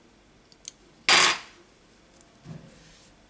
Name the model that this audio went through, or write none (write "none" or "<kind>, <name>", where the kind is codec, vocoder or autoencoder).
none